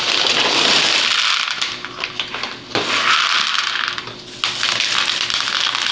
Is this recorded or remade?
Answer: recorded